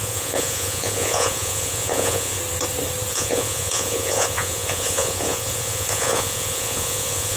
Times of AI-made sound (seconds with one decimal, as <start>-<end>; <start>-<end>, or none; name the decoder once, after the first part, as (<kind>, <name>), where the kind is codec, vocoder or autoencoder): 0.0-2.4 (vocoder, Vocos); 3.1-7.4